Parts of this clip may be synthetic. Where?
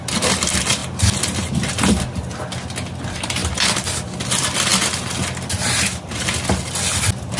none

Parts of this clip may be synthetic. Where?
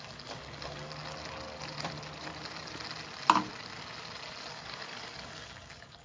0.0-0.9 (codec, DAC); 4.5-6.0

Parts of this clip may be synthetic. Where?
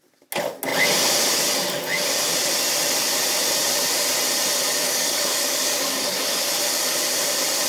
4.8-6.4 (codec, DAC)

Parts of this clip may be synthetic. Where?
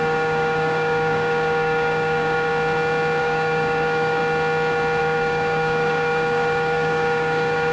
0.0-2.5 (codec, DAC); 3.2-4.2; 5.0-7.7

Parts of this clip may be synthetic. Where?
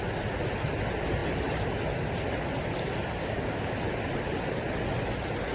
3.2-3.7 (codec, DAC)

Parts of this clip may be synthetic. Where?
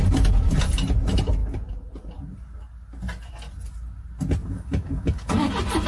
4.4-5.5 (codec, DAC)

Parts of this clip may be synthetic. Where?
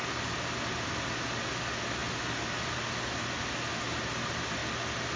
none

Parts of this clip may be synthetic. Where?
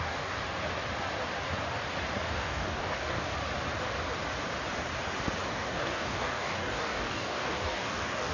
0.0-0.4 (codec, DAC); 2.3-3.3; 5.5-8.3